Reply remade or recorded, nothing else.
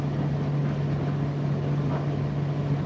recorded